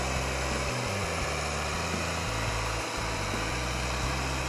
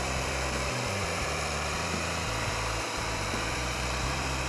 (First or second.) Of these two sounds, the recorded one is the first